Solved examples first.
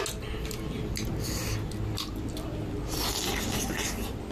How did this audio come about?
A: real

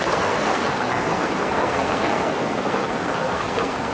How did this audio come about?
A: fake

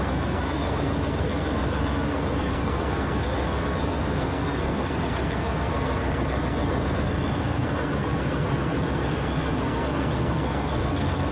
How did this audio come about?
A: fake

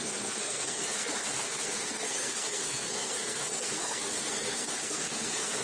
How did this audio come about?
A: fake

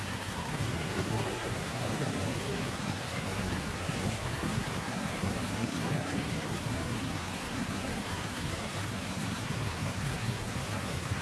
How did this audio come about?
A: fake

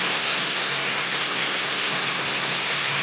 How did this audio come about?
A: fake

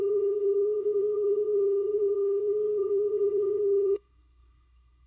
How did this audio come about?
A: fake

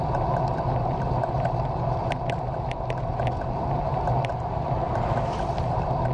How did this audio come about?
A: real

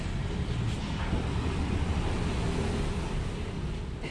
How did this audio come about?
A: real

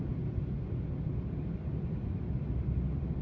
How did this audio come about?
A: real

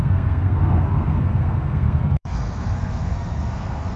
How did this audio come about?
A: fake